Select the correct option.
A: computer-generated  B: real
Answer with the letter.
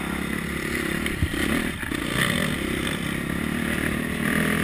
B